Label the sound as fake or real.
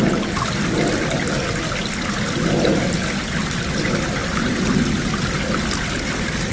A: real